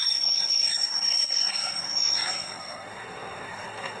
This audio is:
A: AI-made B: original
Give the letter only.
A